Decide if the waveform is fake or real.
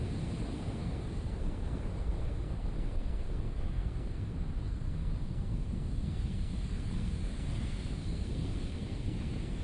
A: fake